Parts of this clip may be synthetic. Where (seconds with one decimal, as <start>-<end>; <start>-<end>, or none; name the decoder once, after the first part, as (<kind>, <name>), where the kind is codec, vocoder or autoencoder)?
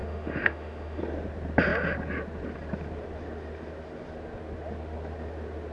0.0-1.0 (autoencoder, DAC-VAE)